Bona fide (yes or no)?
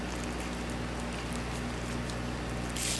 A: yes